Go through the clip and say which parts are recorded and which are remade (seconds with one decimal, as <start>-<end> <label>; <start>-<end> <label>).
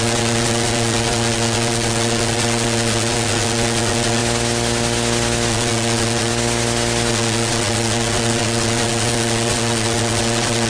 0.0-4.2 remade; 4.2-5.5 recorded; 5.5-6.3 remade; 6.3-7.1 recorded; 7.1-10.7 remade